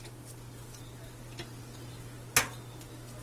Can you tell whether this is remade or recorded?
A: recorded